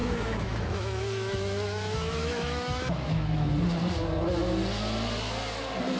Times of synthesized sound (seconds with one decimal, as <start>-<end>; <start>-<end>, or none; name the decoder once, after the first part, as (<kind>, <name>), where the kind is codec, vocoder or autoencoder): 0.0-3.5 (autoencoder, DAC-VAE)